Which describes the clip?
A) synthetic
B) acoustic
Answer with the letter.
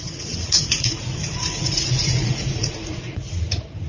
A